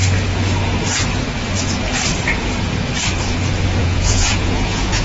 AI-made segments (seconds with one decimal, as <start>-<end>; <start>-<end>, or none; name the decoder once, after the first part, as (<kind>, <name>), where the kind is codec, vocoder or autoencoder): 3.8-5.0 (vocoder, Vocos)